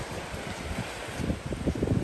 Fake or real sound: real